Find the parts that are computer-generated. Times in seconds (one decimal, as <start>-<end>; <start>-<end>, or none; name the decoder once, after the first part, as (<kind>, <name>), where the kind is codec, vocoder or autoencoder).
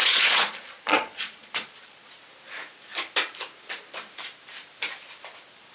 0.0-2.1 (vocoder, Vocos)